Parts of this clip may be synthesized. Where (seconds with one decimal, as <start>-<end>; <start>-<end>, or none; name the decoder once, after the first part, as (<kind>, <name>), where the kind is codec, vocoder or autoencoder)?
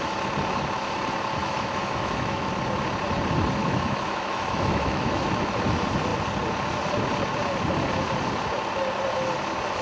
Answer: 1.4-2.5 (autoencoder, DAC-VAE); 3.6-5.6